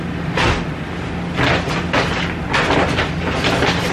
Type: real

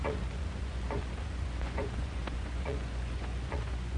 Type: fake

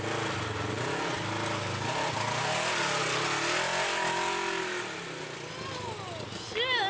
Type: real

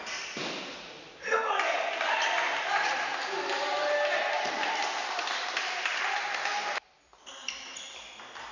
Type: real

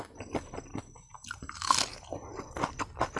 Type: real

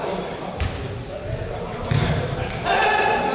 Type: real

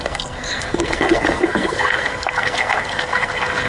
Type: fake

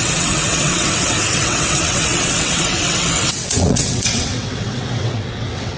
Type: fake